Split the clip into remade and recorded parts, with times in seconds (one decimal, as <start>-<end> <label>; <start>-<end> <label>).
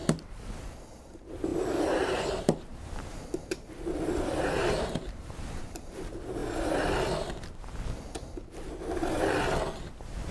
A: 0.0-1.0 recorded; 1.0-6.4 remade; 6.4-9.9 recorded; 9.9-10.3 remade